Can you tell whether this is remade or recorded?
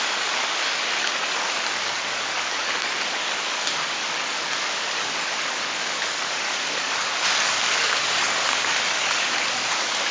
remade